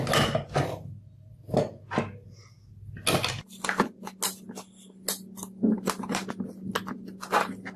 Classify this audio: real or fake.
real